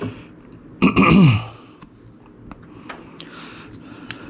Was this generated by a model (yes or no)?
no